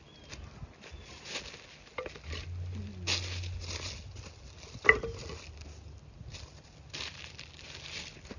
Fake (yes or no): no